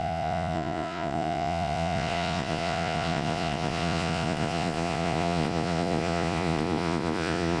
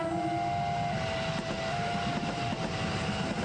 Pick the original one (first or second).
second